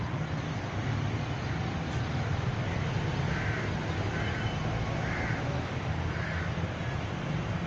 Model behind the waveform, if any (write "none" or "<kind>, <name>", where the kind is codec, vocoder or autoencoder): none